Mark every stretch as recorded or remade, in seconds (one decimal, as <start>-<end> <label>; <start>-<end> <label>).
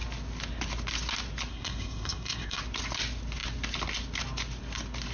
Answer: 0.0-1.5 recorded; 1.5-2.6 remade; 2.6-5.1 recorded